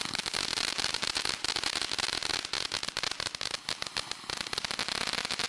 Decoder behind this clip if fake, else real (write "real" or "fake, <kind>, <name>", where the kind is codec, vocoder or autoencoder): real